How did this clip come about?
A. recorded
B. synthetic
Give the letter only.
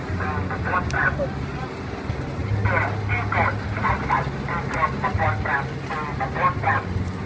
A